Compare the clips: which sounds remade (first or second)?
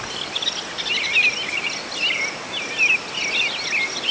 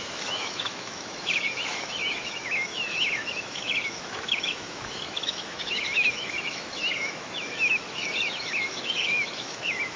second